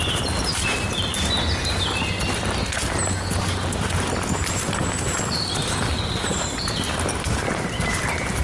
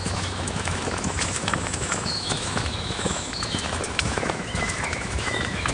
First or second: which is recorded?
first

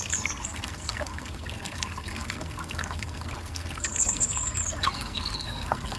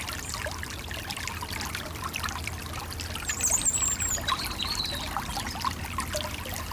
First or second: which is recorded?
second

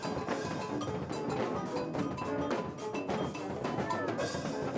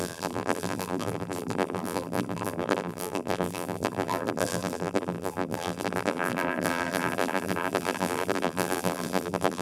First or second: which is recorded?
first